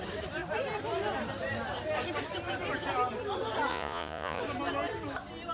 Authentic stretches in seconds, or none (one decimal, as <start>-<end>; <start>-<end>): 0.0-3.7; 4.4-5.5